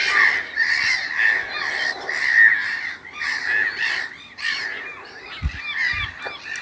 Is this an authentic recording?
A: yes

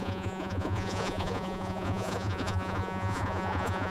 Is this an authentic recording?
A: no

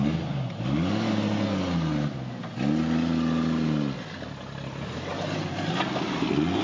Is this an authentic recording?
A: yes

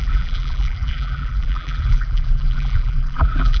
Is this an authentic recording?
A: no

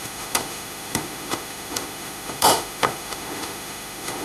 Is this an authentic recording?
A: no